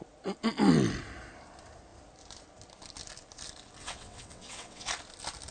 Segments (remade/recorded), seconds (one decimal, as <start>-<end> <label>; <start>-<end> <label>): 0.0-3.8 recorded; 3.8-4.9 remade; 4.9-5.5 recorded